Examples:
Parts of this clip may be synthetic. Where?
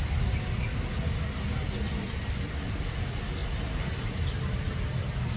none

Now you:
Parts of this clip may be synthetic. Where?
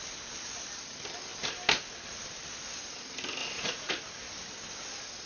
3.4-3.9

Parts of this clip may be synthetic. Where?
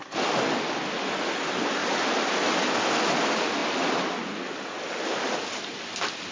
none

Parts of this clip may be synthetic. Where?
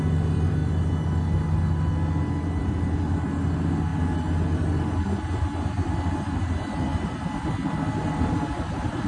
none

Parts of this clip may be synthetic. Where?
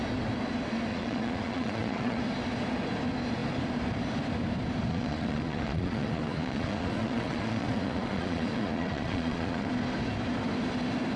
0.9-2.2; 4.9-9.7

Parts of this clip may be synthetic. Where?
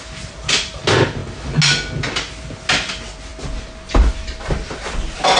none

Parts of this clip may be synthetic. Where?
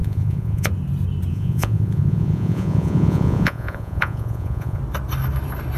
0.0-0.7; 1.3-4.8